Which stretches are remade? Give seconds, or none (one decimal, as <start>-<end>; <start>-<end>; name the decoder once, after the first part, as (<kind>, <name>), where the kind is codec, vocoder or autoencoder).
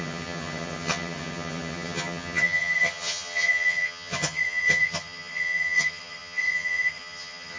0.0-7.6 (vocoder, HiFi-GAN)